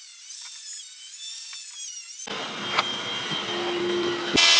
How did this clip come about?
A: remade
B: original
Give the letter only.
B